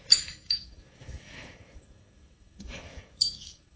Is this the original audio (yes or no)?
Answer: no